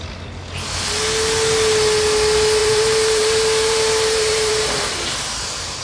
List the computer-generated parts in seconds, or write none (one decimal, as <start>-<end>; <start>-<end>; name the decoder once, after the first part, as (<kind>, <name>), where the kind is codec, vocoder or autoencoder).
2.6-4.8 (vocoder, BigVGAN v2)